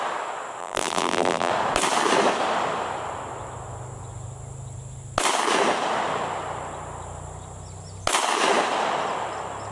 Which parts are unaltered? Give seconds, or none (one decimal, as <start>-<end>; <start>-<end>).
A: 0.0-0.6; 1.5-9.7